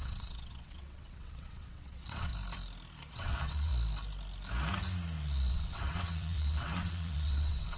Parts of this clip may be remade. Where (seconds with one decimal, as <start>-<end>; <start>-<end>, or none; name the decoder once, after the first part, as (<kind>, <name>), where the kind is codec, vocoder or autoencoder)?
0.0-2.3 (vocoder, WaveNeXt); 3.1-3.7; 5.5-7.8

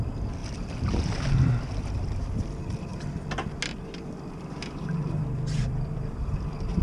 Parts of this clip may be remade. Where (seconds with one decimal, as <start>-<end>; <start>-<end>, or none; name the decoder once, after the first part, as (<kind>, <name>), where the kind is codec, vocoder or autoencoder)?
none

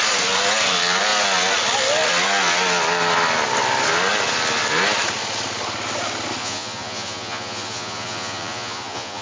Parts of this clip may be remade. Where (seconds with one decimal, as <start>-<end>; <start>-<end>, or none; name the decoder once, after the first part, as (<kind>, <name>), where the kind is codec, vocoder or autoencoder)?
6.4-9.2 (vocoder, Vocos)

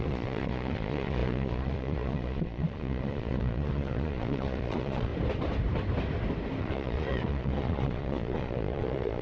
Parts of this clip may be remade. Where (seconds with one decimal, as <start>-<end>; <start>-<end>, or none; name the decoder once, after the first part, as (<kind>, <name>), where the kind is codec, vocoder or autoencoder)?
0.0-5.1 (vocoder, Vocos); 6.6-9.2

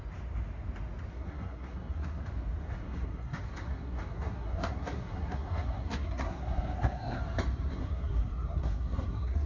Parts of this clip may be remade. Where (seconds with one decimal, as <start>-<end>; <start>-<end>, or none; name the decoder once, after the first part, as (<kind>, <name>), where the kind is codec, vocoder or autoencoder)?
1.1-2.2 (codec, SNAC); 2.6-7.2; 7.7-9.5

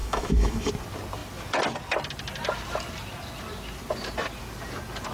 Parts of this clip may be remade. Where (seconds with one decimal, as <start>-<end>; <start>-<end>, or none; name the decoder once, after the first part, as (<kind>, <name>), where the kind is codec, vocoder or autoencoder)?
0.0-0.7 (autoencoder, DAC-VAE)